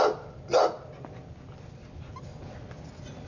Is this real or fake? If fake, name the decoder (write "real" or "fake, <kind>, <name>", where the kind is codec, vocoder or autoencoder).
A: real